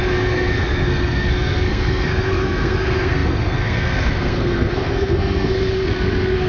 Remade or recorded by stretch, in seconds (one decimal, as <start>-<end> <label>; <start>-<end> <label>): 0.0-6.5 remade